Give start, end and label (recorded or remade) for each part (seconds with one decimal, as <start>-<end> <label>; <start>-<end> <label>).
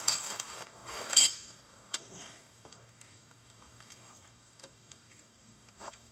0.0-6.1 remade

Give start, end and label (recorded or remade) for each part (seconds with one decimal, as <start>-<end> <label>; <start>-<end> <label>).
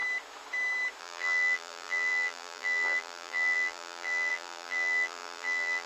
0.0-1.0 recorded; 1.0-5.9 remade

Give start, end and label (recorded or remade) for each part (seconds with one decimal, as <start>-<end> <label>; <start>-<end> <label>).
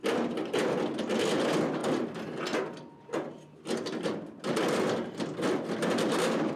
0.0-6.6 recorded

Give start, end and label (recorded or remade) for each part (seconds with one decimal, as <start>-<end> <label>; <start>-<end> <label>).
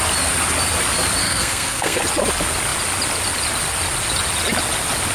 0.0-1.2 recorded; 1.2-2.0 remade; 2.0-5.1 recorded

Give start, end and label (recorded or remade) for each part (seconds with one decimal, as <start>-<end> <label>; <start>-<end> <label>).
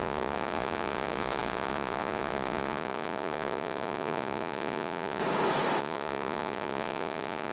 0.0-5.2 remade; 5.2-5.8 recorded; 5.8-7.5 remade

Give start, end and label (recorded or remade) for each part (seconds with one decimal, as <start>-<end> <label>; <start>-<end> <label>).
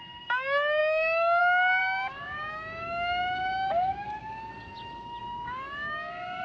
0.0-0.8 recorded; 0.8-1.4 remade; 1.4-1.8 recorded; 1.8-4.5 remade; 4.5-5.2 recorded; 5.2-6.4 remade